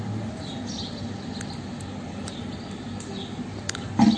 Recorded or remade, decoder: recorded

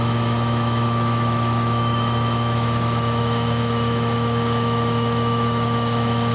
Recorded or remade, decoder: remade, autoencoder, DAC-VAE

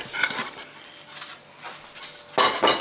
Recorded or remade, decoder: recorded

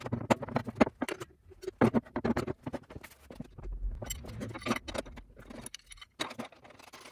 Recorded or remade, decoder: recorded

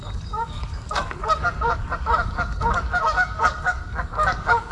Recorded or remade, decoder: remade, codec, DAC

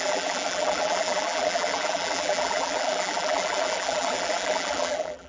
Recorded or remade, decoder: remade, vocoder, BigVGAN v2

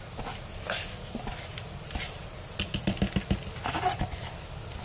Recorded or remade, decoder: recorded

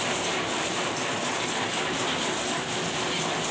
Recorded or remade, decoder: recorded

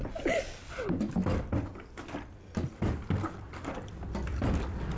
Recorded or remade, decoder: recorded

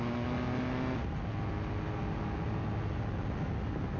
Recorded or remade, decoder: recorded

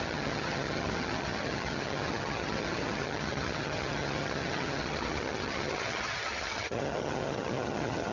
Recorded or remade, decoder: remade, vocoder, HiFi-GAN